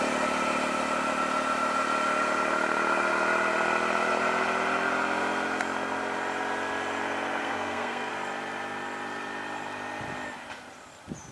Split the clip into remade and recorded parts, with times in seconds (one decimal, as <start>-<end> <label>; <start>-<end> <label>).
0.0-7.4 recorded; 7.4-8.1 remade; 8.1-11.3 recorded